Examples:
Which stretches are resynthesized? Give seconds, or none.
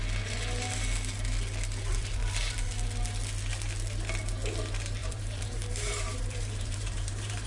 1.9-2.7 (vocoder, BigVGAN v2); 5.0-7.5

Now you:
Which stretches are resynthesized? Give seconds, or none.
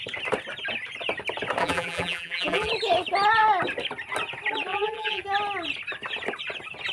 1.6-2.7 (vocoder, BigVGAN v2); 4.7-5.2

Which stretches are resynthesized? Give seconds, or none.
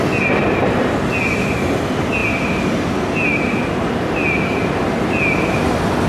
none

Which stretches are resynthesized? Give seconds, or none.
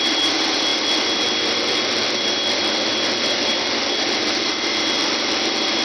0.0-5.8 (vocoder, BigVGAN v2)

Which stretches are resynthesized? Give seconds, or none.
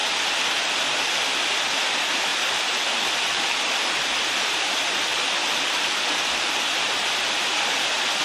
2.3-4.6 (vocoder, BigVGAN v2)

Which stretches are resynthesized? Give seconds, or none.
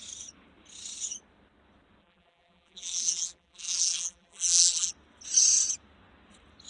2.0-4.9 (vocoder, BigVGAN v2)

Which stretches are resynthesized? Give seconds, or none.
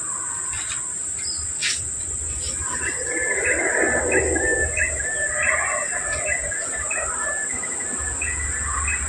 none